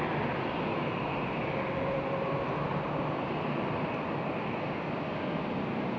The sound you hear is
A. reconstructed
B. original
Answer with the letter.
B